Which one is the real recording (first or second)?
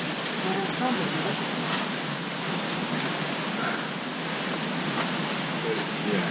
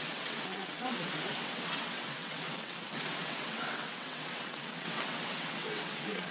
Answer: first